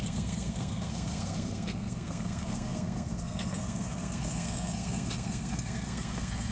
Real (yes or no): no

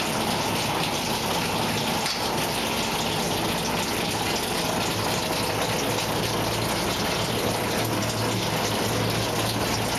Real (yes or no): yes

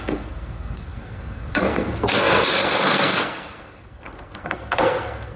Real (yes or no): no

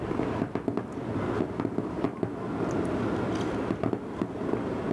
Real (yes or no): yes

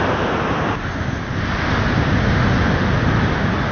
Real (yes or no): yes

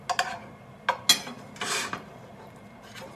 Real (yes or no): yes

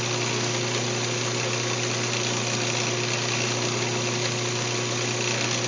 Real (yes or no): yes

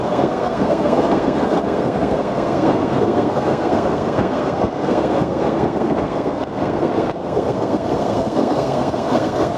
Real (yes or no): no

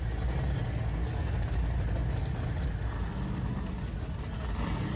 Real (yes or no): yes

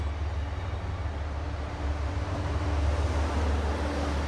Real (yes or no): yes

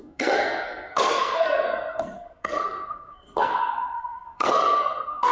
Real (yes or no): no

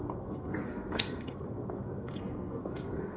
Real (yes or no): no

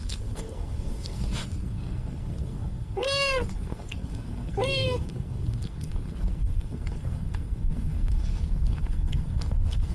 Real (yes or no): no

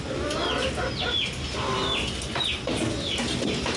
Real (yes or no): yes